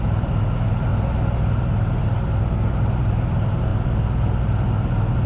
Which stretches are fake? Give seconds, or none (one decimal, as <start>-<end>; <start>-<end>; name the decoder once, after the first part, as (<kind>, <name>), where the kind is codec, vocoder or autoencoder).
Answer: none